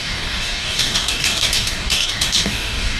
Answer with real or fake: fake